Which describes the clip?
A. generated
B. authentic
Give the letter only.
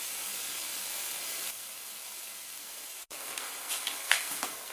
A